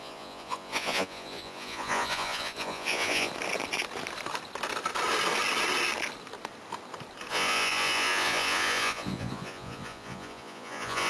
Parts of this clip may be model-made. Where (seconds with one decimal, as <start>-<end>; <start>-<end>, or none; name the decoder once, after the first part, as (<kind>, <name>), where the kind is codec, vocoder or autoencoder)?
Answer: 0.0-3.3 (vocoder, Vocos); 7.3-11.1